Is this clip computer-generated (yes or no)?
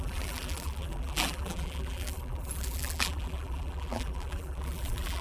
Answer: yes